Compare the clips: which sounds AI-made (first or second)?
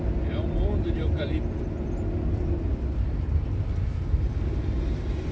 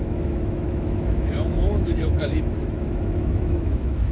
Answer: second